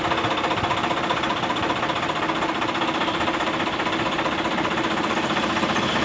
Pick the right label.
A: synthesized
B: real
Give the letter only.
A